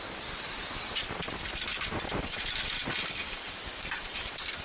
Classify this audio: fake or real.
real